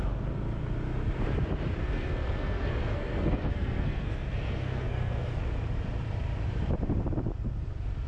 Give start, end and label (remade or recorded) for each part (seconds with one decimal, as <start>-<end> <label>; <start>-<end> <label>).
0.0-1.8 recorded; 1.8-5.4 remade; 5.4-8.1 recorded